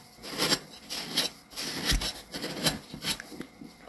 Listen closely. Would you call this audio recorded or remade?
recorded